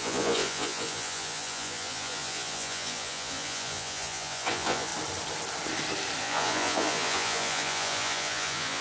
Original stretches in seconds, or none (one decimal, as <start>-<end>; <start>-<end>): 4.9-6.2